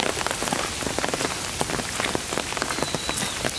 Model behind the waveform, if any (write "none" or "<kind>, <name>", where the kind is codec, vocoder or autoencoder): none